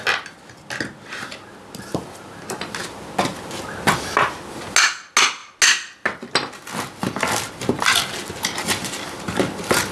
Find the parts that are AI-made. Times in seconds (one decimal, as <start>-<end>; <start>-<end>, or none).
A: none